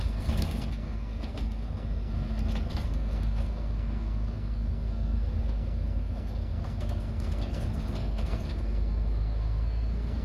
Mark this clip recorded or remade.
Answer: remade